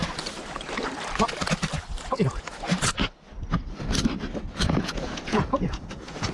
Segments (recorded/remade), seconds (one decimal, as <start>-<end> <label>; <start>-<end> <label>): 0.0-2.0 recorded; 2.0-2.7 remade; 2.7-4.7 recorded; 4.7-6.3 remade